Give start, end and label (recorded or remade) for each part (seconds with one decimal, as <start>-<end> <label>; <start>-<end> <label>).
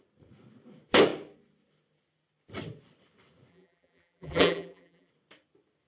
0.0-3.5 recorded; 3.5-5.1 remade; 5.1-5.9 recorded